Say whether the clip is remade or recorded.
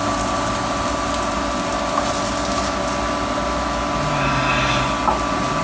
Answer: recorded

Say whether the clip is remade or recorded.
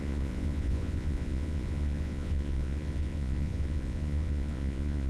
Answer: remade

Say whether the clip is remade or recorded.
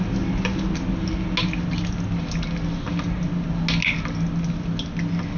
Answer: recorded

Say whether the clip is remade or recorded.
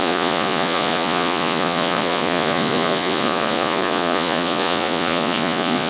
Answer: remade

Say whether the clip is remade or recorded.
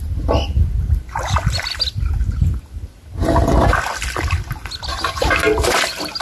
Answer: recorded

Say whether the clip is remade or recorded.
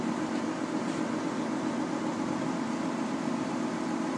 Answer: recorded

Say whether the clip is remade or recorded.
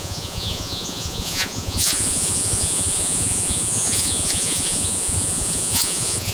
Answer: remade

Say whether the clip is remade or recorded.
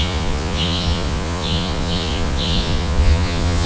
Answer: remade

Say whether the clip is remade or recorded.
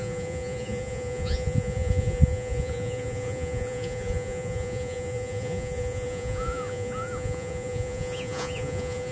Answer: remade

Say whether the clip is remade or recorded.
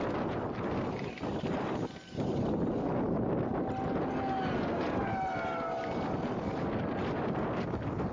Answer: recorded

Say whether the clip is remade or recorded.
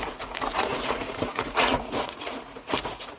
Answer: remade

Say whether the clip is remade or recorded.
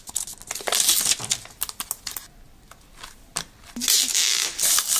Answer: recorded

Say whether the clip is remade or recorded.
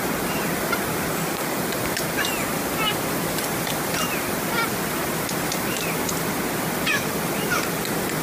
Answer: recorded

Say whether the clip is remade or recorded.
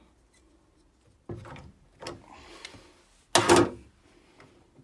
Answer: recorded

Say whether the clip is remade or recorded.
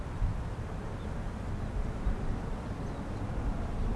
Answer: recorded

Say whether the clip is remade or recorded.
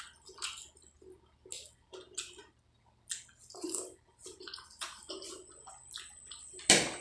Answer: recorded